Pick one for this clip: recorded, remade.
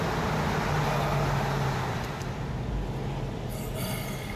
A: recorded